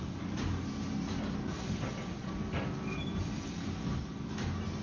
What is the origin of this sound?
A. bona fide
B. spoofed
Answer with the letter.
A